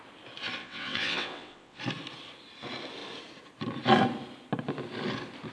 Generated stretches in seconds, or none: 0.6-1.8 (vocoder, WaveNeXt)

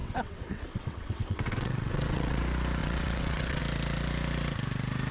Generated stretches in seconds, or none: 0.0-2.4 (vocoder, WaveNeXt); 2.8-3.6

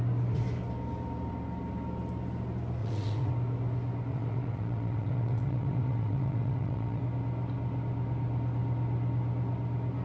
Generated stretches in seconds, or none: 2.8-3.3 (vocoder, WaveNeXt); 4.1-7.0